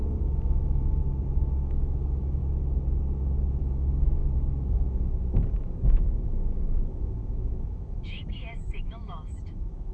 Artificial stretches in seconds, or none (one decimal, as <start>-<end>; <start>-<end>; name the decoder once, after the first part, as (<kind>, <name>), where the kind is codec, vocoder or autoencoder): 0.0-1.0 (autoencoder, DAC-VAE); 1.7-2.4; 3.6-9.9